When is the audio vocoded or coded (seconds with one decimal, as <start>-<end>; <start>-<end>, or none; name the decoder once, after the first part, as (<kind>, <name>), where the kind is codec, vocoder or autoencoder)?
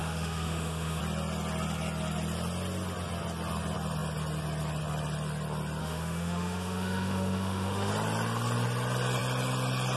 0.0-1.0 (autoencoder, DAC-VAE); 5.8-7.9